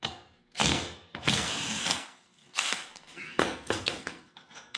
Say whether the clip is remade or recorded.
remade